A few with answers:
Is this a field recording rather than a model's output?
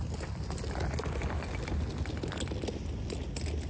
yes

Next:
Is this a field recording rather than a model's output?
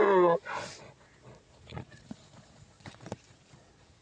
no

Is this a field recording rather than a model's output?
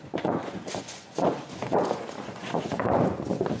no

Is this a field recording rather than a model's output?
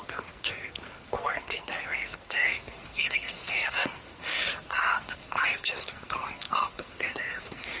no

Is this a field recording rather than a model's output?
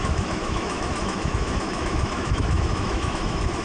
no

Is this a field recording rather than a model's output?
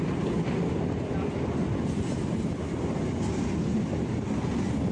yes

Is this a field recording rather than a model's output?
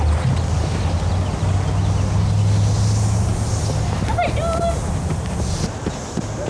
yes